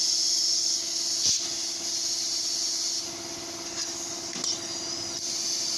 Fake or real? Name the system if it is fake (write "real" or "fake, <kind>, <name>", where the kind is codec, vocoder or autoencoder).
real